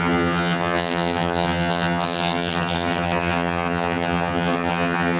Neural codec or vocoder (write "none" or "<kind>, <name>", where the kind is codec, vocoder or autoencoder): vocoder, HiFi-GAN